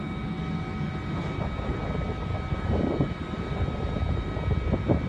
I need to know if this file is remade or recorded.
recorded